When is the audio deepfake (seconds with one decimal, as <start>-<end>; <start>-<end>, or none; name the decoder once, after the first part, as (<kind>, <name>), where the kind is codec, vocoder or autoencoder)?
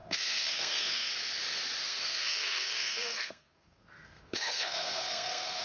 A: 0.0-1.1 (codec, SNAC); 1.8-5.6